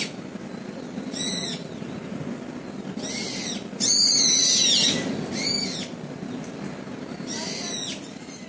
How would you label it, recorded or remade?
recorded